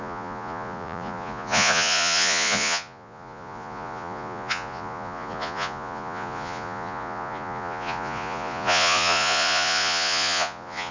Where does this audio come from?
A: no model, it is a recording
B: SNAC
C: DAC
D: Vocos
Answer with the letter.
D